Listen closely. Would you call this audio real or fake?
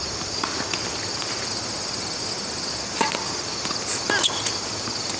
real